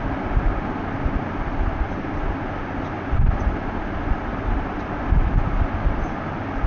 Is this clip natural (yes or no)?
yes